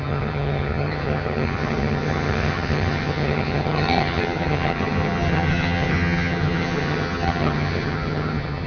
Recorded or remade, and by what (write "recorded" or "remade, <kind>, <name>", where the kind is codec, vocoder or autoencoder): remade, vocoder, HiFi-GAN